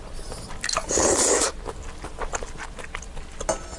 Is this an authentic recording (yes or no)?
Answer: yes